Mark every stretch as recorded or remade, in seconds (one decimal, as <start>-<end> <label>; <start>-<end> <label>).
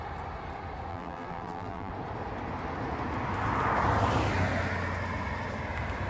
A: 0.0-0.9 recorded; 0.9-1.9 remade; 1.9-6.1 recorded